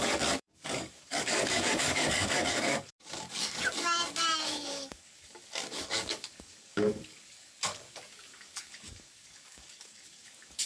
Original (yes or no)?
no